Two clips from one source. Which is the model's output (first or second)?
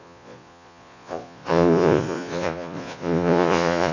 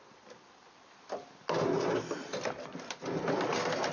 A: first